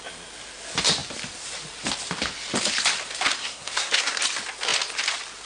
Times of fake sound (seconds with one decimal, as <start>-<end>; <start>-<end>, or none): 3.4-4.2